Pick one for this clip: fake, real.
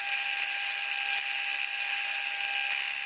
real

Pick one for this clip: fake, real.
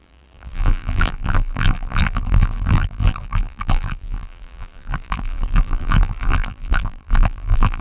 fake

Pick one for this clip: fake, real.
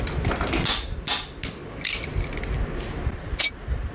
real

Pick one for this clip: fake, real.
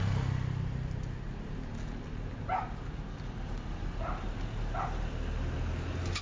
real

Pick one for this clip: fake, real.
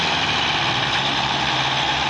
real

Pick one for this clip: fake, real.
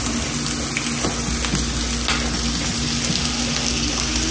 real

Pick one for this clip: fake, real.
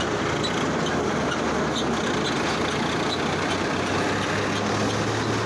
real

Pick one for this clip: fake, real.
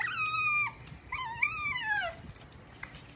real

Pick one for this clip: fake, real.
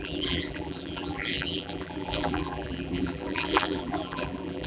fake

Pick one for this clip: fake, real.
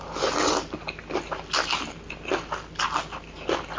fake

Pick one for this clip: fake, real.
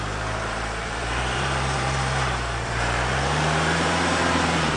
fake